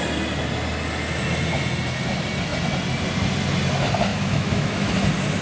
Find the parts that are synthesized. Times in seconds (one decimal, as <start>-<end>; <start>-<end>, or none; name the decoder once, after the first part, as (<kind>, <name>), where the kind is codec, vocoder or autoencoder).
4.1-4.9 (autoencoder, DAC-VAE)

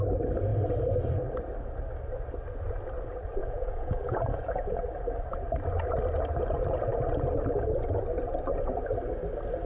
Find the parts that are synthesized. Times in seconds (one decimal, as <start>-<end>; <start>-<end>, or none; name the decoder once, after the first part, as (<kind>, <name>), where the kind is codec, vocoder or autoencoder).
3.4-4.8 (vocoder, Vocos)

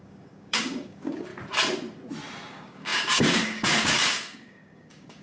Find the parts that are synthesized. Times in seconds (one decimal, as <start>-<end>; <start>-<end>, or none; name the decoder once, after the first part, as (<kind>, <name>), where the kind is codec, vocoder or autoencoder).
0.0-1.3 (codec, DAC); 2.5-5.2

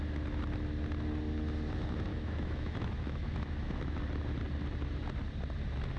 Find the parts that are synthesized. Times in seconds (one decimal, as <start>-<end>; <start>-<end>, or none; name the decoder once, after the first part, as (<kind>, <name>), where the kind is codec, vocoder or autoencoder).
2.1-4.0 (autoencoder, DAC-VAE)

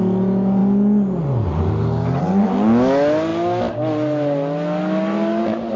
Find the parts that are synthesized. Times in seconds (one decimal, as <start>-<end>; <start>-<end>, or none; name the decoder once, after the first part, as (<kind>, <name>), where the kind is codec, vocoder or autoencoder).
none

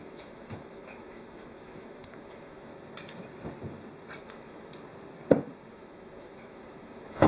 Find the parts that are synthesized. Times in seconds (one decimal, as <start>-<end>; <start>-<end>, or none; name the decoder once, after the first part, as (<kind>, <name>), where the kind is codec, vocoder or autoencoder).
0.0-2.7 (autoencoder, DAC-VAE); 4.2-4.7; 5.7-7.3

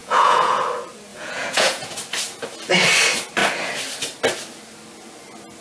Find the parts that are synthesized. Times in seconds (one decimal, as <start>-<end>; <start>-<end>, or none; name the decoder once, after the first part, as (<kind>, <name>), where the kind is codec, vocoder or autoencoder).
0.0-0.6 (vocoder, Vocos); 1.1-1.9